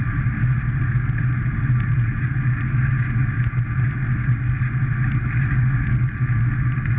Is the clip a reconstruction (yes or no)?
no